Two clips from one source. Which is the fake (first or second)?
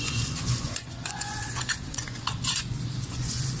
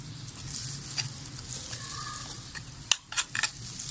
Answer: first